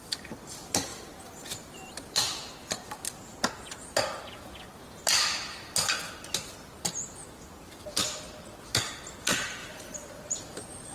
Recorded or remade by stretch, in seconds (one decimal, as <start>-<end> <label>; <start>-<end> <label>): 0.0-0.9 recorded; 0.9-2.5 remade; 2.5-9.6 recorded; 9.6-10.4 remade; 10.4-10.9 recorded